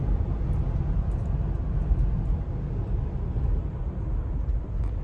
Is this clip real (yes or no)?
yes